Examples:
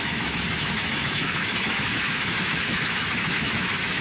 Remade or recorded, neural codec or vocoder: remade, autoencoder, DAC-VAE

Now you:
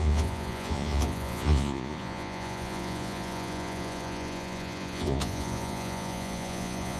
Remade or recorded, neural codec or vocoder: remade, vocoder, Vocos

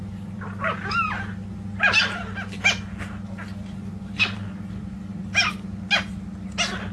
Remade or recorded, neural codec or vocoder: recorded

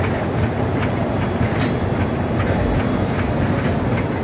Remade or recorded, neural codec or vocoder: recorded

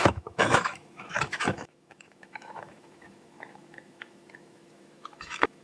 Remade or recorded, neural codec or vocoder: remade, autoencoder, DAC-VAE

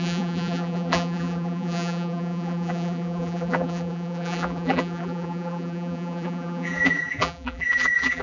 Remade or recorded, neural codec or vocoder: remade, vocoder, BigVGAN v2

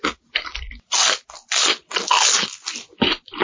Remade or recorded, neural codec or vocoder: recorded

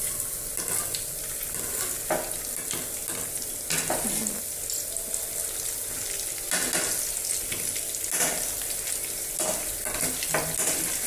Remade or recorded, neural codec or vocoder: recorded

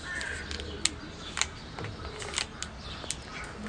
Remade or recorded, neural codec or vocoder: recorded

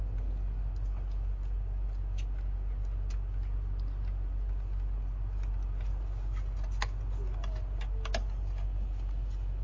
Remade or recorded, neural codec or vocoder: recorded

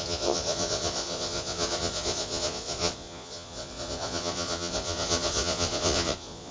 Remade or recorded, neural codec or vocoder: remade, vocoder, Vocos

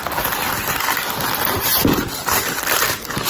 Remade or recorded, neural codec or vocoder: recorded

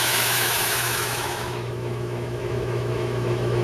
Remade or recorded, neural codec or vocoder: remade, autoencoder, DAC-VAE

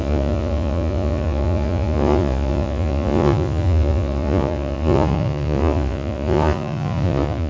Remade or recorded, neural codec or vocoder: remade, vocoder, Vocos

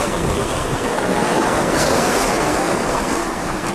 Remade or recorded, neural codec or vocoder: remade, codec, SNAC